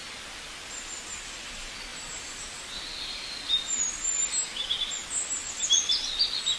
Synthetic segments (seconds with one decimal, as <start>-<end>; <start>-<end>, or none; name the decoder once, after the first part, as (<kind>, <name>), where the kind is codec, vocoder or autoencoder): none